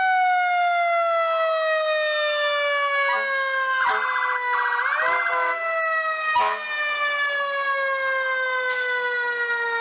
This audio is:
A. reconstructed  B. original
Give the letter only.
B